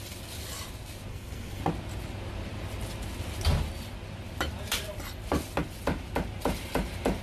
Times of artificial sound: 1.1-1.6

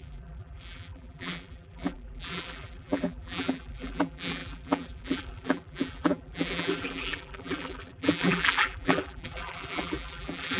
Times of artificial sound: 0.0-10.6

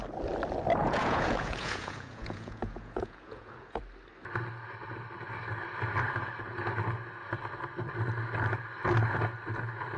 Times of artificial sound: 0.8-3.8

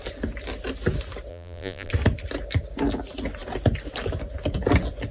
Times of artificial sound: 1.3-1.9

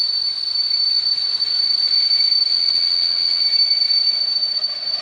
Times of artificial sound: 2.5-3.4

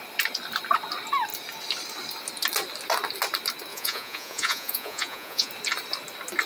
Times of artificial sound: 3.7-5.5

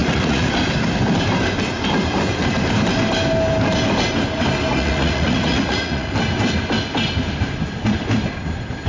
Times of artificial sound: 0.0-0.5; 4.7-6.1